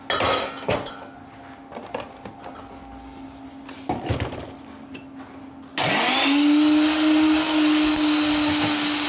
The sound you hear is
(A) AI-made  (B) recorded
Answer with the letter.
B